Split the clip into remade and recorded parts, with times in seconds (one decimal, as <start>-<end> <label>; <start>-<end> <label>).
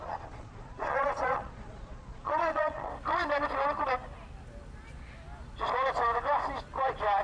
0.0-2.9 remade; 2.9-7.2 recorded